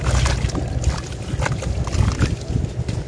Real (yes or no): yes